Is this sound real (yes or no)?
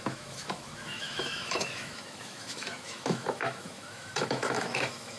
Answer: no